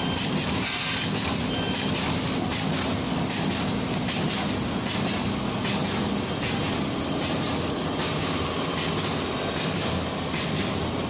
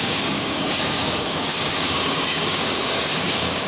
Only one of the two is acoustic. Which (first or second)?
first